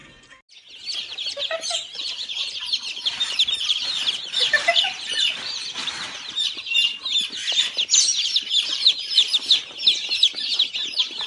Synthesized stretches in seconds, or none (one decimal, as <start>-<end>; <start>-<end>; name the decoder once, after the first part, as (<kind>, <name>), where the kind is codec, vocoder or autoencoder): 1.9-6.6 (vocoder, BigVGAN v2); 8.1-9.4